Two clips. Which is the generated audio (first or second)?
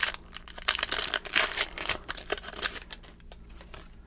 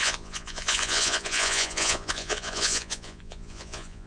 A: second